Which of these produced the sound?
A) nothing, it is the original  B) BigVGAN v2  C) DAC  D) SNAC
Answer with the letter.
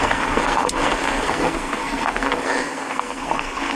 D